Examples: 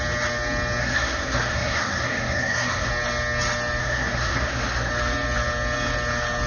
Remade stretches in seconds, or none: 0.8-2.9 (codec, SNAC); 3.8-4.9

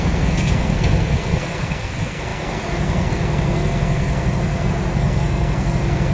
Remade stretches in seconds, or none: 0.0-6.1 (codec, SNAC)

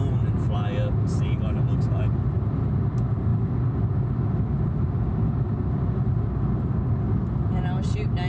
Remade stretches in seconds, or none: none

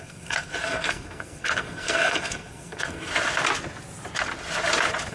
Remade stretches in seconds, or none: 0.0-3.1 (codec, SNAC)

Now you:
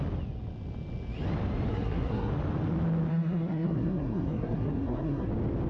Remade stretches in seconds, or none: 1.7-2.3 (codec, SNAC); 3.1-5.3

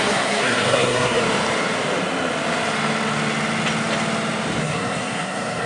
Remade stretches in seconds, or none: 0.0-1.2 (codec, SNAC); 4.6-5.7

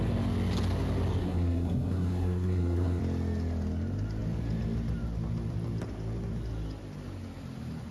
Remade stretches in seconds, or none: 1.2-3.0 (codec, SNAC)